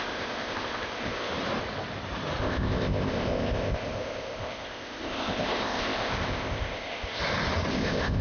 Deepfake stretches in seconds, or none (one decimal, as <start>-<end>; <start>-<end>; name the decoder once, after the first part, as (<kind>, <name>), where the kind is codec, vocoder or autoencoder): 0.0-1.3 (codec, ZipCodec); 2.4-7.2; 7.7-8.2